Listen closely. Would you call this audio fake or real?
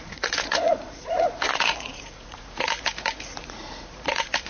fake